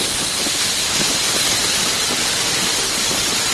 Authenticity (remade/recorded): recorded